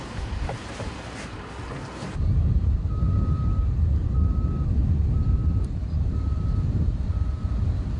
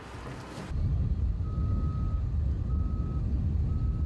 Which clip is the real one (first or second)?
second